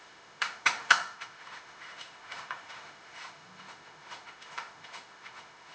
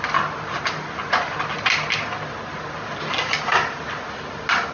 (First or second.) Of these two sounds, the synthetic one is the first